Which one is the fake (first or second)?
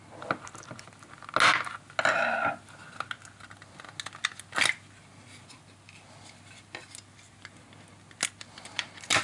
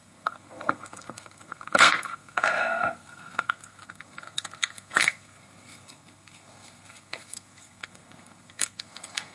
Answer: second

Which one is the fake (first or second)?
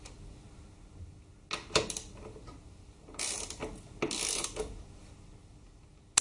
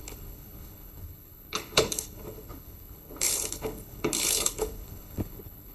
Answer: second